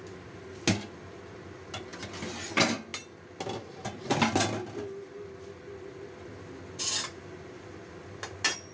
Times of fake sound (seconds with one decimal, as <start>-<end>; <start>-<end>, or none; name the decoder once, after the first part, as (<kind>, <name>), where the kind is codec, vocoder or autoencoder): none